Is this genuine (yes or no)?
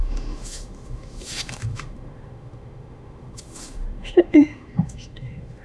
no